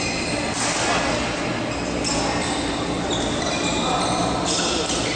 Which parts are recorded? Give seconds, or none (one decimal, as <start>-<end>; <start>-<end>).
0.0-5.2